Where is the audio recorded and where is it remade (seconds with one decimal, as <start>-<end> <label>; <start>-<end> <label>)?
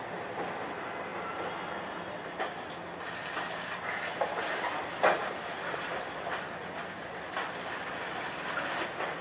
0.0-9.2 recorded